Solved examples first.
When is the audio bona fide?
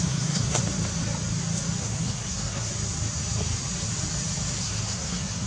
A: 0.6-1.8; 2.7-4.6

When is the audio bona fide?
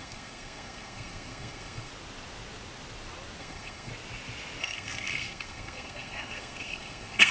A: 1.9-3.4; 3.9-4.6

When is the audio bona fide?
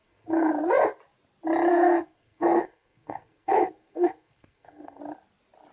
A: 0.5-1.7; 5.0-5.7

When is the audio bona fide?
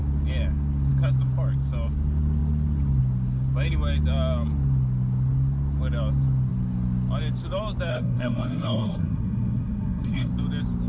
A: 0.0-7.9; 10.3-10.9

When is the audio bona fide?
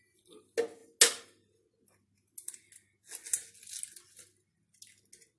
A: 0.0-5.4